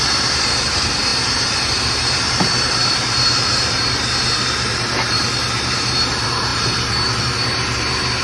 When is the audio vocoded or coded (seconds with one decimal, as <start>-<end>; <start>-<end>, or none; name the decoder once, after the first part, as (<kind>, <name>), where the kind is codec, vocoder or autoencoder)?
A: 0.0-1.1 (vocoder, BigVGAN v2); 1.9-8.2

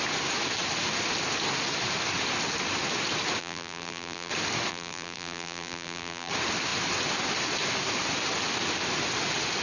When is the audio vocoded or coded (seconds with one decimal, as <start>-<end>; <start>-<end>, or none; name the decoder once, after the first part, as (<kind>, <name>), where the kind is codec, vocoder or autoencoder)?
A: 3.4-4.3 (vocoder, BigVGAN v2); 4.7-6.3